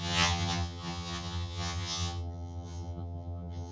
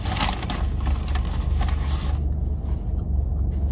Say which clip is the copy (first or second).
first